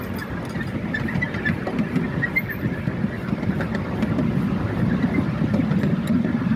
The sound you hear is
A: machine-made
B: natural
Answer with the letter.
B